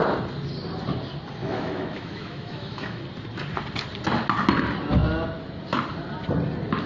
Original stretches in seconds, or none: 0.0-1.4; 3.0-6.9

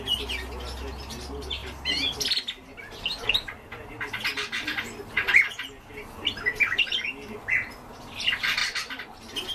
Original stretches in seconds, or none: 0.0-9.5

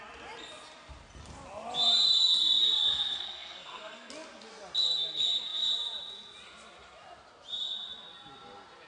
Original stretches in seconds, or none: 0.0-2.8; 4.1-8.9

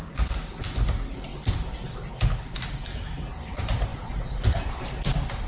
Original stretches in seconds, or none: 0.0-2.8; 3.3-5.5

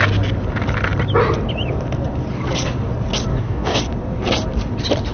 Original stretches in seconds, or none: 0.0-3.3; 3.8-5.1

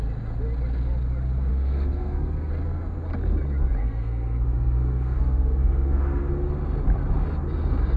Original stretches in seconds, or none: 0.0-1.5; 2.5-3.8; 6.3-8.0